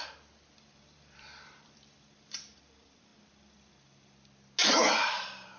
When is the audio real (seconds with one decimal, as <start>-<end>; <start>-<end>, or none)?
3.1-4.8